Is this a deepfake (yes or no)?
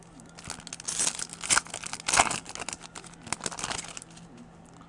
no